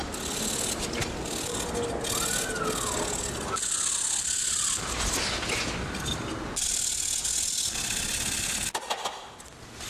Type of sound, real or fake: real